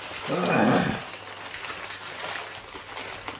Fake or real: real